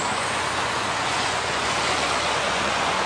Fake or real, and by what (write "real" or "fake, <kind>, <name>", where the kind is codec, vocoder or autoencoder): fake, vocoder, Vocos